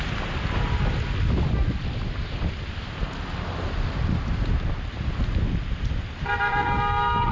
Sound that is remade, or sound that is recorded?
recorded